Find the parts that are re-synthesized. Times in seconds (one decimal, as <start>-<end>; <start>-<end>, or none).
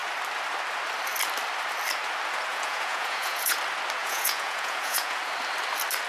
2.5-3.6; 4.0-5.2